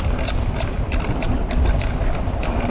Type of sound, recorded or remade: recorded